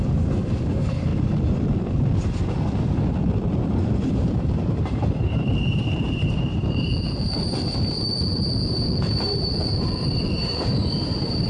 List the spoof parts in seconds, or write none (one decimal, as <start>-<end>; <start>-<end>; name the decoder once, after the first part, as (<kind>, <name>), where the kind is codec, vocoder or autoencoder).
0.0-1.1 (vocoder, BigVGAN v2); 4.1-11.5